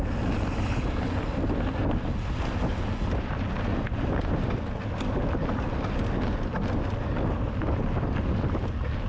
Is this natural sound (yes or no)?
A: yes